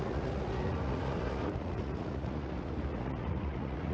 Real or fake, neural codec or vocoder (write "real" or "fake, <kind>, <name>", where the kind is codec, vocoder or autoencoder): fake, vocoder, Vocos